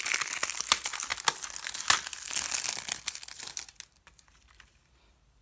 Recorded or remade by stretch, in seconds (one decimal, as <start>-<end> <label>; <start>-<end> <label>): 0.0-5.4 recorded